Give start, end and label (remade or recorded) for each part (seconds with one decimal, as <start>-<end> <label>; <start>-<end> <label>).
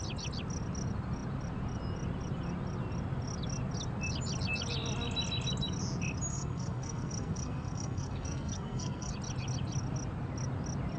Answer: 0.0-6.3 recorded; 6.3-9.1 remade; 9.1-11.0 recorded